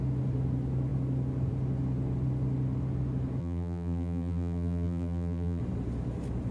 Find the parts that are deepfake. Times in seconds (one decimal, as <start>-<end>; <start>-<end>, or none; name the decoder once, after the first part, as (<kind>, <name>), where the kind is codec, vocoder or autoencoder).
3.4-5.6 (vocoder, BigVGAN v2)